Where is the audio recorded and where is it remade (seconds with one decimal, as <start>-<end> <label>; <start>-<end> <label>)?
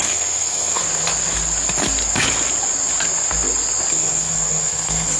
0.0-0.8 remade; 0.8-3.9 recorded; 3.9-5.2 remade